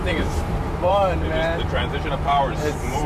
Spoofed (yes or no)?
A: yes